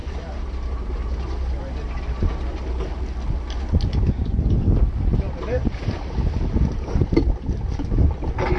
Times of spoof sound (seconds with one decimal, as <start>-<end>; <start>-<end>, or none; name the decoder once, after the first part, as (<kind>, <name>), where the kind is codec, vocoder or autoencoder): 0.0-2.9 (vocoder, BigVGAN v2); 5.1-7.3